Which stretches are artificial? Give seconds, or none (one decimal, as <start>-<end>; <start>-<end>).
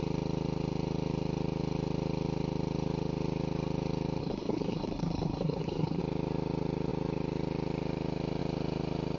4.2-6.0